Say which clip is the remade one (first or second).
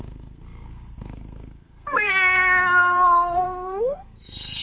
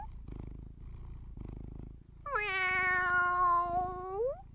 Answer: first